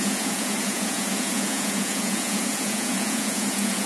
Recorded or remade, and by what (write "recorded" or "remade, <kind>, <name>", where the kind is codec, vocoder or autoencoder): remade, vocoder, Vocos